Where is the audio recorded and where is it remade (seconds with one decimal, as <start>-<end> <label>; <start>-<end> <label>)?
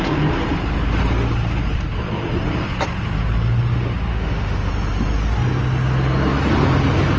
0.0-4.1 recorded; 4.1-4.7 remade; 4.7-7.2 recorded